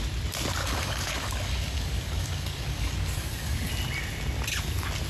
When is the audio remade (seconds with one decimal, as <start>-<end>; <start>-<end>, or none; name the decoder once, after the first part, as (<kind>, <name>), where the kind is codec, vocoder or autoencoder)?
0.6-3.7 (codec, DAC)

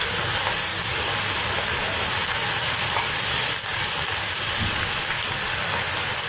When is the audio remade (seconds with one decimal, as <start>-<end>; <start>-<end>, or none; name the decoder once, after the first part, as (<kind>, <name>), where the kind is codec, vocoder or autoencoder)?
0.7-3.2 (vocoder, BigVGAN v2)

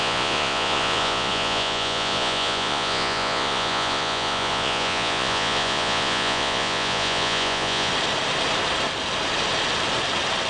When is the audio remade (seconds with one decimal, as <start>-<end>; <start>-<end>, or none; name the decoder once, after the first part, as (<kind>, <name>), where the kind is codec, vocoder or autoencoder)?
0.0-7.9 (vocoder, Vocos)

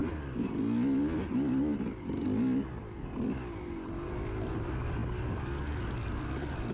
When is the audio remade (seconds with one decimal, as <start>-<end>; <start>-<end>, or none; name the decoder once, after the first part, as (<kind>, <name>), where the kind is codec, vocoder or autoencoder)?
none

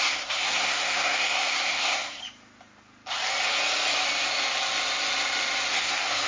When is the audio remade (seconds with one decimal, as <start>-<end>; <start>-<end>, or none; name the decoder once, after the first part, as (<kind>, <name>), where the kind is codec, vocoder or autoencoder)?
0.0-2.2 (codec, SNAC); 5.7-6.3

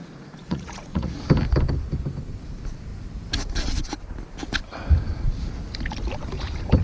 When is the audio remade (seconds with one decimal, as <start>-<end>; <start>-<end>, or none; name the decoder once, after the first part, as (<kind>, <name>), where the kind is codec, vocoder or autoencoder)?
0.0-1.2 (vocoder, Vocos)